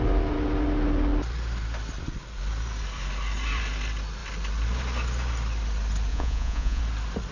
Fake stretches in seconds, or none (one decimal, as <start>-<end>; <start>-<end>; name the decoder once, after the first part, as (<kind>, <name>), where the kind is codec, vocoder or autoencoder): 6.1-6.8 (vocoder, Vocos)